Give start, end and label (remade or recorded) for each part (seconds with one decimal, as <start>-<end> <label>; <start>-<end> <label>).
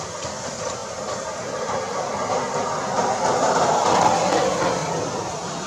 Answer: 0.0-5.7 recorded